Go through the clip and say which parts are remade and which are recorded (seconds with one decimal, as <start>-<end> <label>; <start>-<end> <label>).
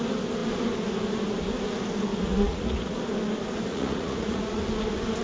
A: 0.0-2.1 recorded; 2.1-3.0 remade; 3.0-3.7 recorded; 3.7-4.6 remade; 4.6-5.2 recorded